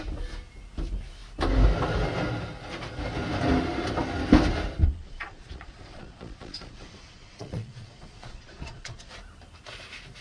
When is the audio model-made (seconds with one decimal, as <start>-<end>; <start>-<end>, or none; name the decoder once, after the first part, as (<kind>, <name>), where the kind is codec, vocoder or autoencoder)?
4.8-9.1 (vocoder, Vocos)